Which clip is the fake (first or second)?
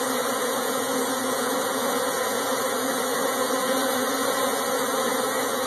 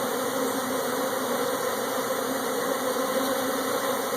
first